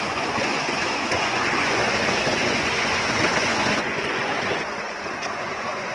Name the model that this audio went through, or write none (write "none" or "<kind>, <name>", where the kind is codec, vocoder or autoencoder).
vocoder, Vocos